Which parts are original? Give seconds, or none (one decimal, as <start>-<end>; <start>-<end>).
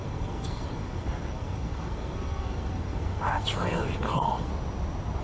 4.5-5.2